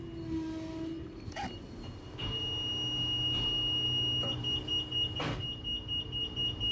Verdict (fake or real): real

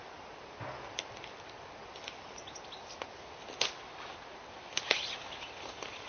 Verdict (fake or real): real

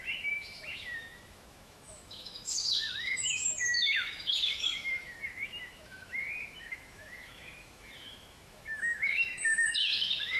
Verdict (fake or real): fake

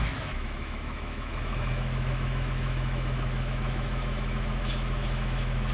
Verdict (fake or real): fake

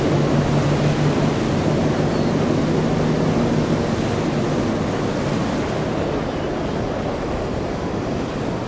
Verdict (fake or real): real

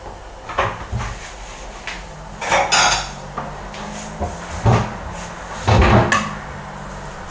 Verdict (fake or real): real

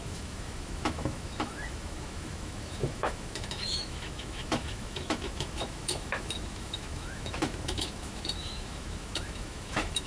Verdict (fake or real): fake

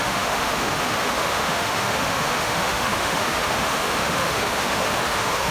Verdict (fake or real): fake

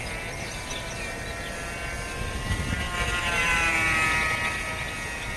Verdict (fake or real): real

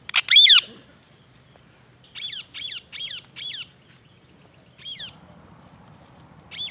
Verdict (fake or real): real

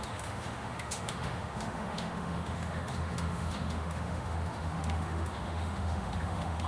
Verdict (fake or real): fake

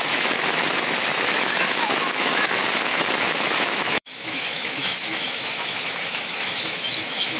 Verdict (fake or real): fake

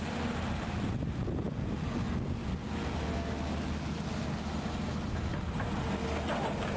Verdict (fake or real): real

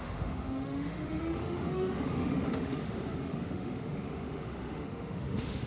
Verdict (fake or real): fake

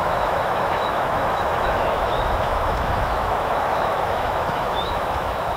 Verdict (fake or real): fake